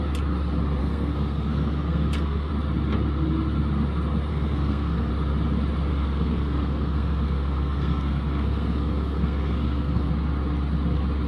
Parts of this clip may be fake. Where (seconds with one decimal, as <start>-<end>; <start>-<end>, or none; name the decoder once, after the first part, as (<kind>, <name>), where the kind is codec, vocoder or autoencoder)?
0.8-2.5 (codec, SNAC); 4.3-5.1; 5.9-10.1